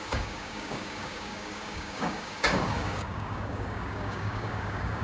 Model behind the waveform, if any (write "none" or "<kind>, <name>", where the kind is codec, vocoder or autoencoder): codec, DAC